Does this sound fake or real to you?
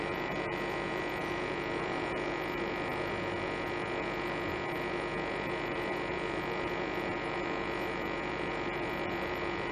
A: fake